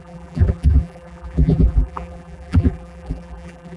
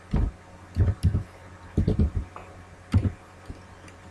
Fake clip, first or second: first